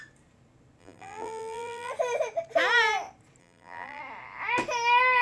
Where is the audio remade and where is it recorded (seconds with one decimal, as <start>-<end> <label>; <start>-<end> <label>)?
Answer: 0.0-0.8 recorded; 0.8-1.9 remade; 1.9-3.4 recorded; 3.4-4.0 remade; 4.0-5.2 recorded